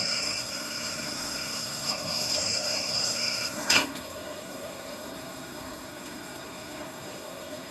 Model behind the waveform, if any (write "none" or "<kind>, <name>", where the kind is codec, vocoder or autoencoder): codec, SNAC